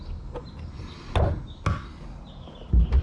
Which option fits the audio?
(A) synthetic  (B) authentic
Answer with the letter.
B